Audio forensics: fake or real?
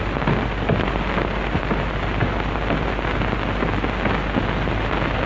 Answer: real